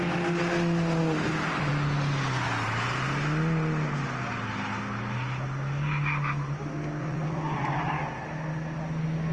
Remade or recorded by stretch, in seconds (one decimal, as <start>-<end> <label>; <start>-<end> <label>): 0.0-7.0 recorded; 7.0-7.9 remade; 7.9-9.3 recorded